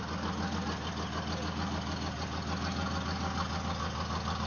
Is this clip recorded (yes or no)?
yes